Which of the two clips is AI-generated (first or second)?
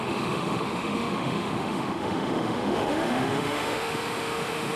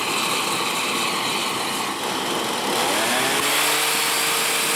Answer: first